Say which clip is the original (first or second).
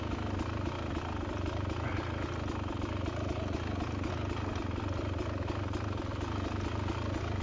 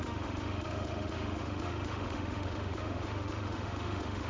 first